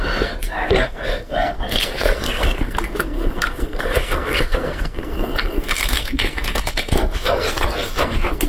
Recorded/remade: remade